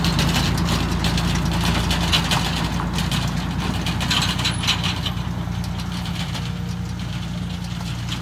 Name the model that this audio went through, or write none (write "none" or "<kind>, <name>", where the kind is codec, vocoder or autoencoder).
none